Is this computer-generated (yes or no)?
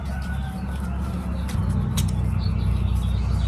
no